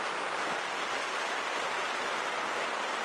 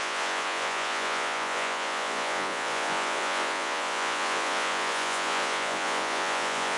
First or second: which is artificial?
second